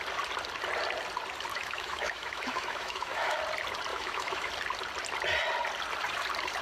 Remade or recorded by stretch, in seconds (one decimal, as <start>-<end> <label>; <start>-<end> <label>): 0.0-1.5 recorded; 1.5-3.4 remade; 3.4-3.9 recorded; 3.9-4.5 remade; 4.5-6.6 recorded